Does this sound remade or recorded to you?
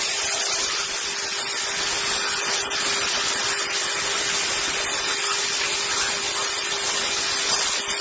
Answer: recorded